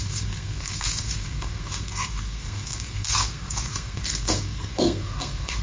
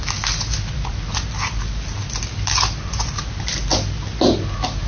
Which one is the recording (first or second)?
second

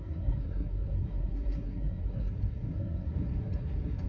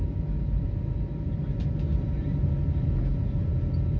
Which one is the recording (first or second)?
second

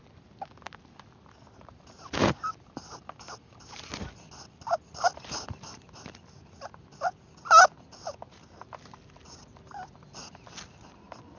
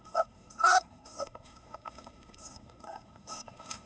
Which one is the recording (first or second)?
first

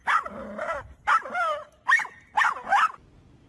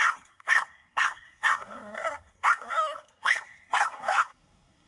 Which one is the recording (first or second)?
first